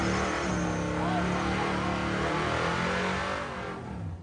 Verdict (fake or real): real